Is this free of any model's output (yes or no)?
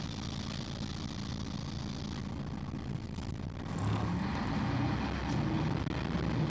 yes